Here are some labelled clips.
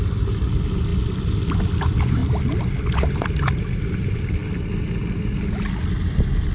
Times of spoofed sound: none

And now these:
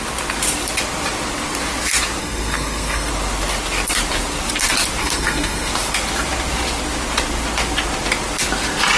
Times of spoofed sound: 2.2-3.1 (codec, SNAC); 5.0-5.7

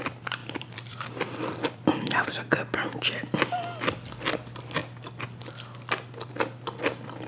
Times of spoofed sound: 0.4-2.3 (vocoder, BigVGAN v2)

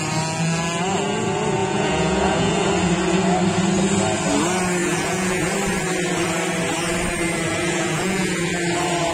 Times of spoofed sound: 1.6-2.7 (vocoder, Vocos); 4.8-5.5; 7.5-8.5

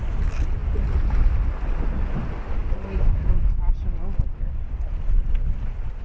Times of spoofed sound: 2.6-5.3 (vocoder, BigVGAN v2)